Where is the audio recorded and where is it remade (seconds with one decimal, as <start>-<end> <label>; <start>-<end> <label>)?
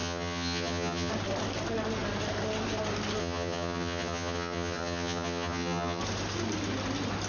0.0-1.1 remade; 1.1-3.2 recorded; 3.2-6.0 remade; 6.0-7.3 recorded